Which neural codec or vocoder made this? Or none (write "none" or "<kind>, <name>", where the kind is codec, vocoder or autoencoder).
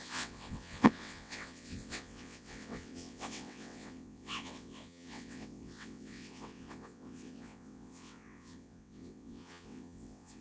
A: vocoder, WaveNeXt